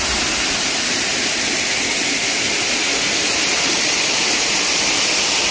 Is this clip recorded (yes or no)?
yes